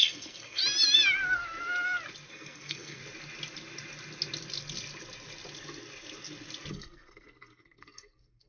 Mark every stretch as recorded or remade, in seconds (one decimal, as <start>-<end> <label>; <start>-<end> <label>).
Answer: 0.0-0.6 remade; 0.6-2.3 recorded; 2.3-3.0 remade; 3.0-6.7 recorded; 6.7-8.5 remade